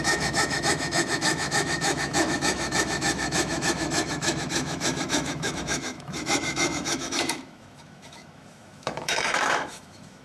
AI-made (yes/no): yes